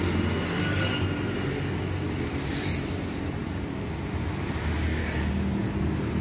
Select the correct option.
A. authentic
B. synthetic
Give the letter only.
A